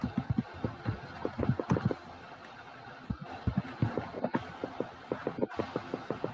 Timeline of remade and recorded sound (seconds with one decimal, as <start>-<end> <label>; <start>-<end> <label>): 0.0-6.3 recorded